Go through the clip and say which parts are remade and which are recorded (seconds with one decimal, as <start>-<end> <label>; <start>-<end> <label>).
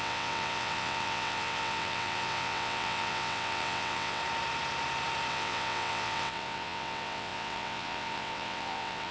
0.0-4.2 remade; 4.2-5.3 recorded; 5.3-9.1 remade